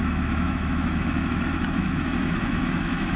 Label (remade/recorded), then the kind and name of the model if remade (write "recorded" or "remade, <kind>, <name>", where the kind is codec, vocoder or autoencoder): remade, autoencoder, DAC-VAE